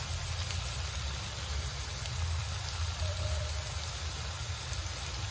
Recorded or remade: recorded